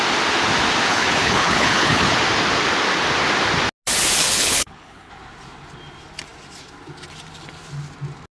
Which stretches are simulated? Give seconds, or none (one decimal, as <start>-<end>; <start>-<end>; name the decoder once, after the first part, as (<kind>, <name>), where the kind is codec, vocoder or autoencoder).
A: 0.9-2.2 (codec, HILCodec); 4.2-5.1